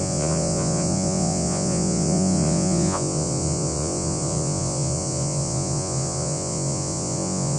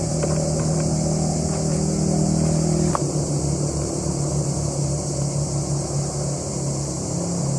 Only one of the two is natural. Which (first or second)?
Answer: second